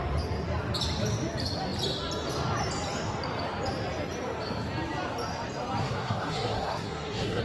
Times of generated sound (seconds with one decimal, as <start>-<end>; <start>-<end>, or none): 5.8-7.4

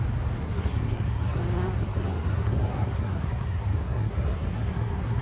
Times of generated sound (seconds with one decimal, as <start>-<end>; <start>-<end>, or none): 0.4-1.4; 1.8-5.2